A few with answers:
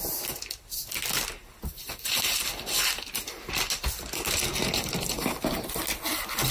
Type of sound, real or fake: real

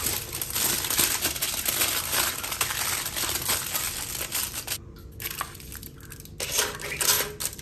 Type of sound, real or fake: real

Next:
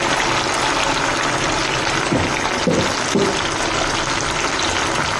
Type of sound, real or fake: real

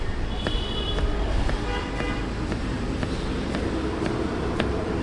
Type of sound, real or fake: fake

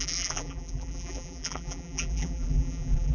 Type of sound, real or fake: fake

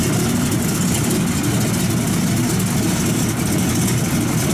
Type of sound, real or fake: real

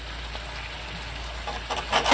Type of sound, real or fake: real